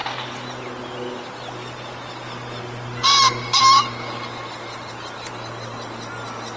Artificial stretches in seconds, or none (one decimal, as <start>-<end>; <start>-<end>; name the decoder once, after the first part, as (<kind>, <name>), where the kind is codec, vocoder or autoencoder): none